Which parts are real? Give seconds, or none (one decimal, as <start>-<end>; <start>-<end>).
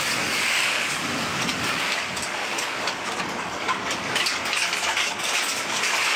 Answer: none